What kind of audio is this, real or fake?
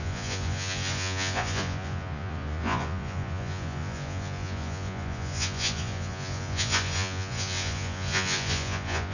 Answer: fake